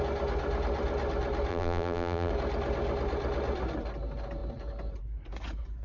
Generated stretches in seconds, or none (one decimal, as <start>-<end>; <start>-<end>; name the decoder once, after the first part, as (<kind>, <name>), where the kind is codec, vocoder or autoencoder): 1.5-2.3 (vocoder, BigVGAN v2)